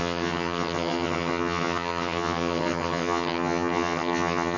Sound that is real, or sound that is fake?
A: fake